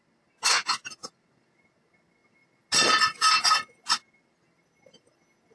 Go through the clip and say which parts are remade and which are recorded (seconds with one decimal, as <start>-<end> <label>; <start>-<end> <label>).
0.0-5.5 recorded